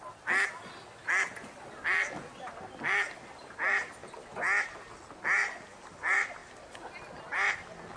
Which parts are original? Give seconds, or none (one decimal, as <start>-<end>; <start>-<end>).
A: 0.0-8.0